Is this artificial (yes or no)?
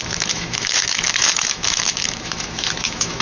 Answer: yes